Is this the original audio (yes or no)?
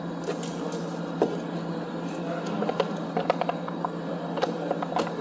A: yes